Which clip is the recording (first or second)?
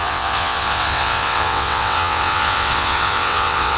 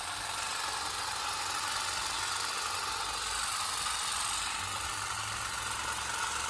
second